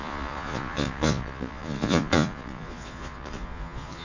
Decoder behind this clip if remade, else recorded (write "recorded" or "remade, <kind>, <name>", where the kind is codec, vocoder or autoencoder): remade, vocoder, Vocos